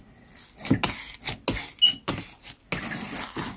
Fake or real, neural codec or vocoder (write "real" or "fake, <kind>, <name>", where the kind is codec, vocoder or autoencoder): real